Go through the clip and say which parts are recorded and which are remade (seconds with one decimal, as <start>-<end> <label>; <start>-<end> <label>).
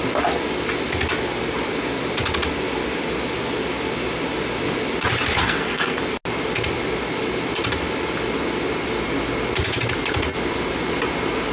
0.0-5.4 recorded; 5.4-6.0 remade; 6.0-11.5 recorded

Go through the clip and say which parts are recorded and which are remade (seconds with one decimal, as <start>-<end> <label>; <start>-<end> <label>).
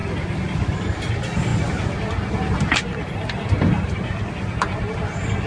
0.0-5.5 recorded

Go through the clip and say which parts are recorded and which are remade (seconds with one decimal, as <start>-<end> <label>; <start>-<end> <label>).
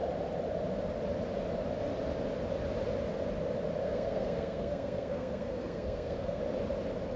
0.0-3.8 recorded; 3.8-6.4 remade; 6.4-7.2 recorded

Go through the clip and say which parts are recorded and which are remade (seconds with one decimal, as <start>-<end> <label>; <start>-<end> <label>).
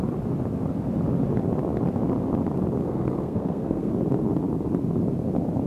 0.0-2.8 recorded; 2.8-3.9 remade; 3.9-5.7 recorded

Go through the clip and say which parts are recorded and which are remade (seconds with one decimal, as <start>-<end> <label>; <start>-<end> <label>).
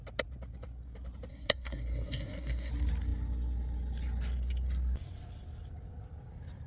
0.0-1.3 recorded; 1.3-2.7 remade; 2.7-6.7 recorded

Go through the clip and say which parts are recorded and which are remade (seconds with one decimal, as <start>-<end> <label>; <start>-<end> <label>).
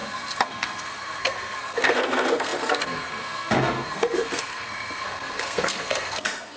0.0-6.6 remade